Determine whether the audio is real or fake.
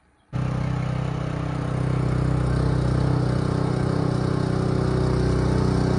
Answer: real